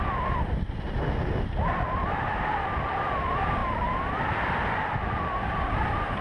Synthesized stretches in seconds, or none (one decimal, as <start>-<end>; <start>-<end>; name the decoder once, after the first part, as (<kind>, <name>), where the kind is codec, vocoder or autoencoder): none